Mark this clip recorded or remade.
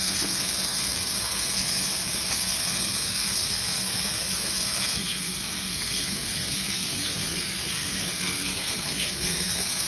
remade